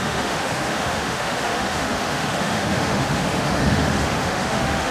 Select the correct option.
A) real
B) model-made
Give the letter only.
B